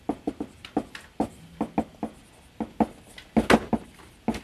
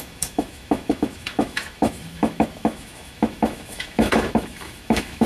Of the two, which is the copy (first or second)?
second